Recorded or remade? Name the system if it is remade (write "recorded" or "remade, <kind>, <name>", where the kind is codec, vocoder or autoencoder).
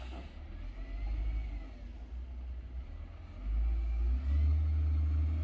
recorded